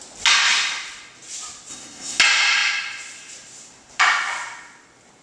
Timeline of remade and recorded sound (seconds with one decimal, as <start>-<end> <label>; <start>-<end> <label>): 0.0-1.7 recorded; 1.7-2.2 remade; 2.2-5.2 recorded